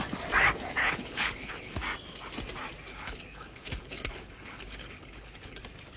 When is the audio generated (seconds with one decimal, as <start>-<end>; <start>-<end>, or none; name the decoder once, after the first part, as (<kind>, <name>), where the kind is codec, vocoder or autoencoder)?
0.8-1.8 (codec, HILCodec); 2.9-5.6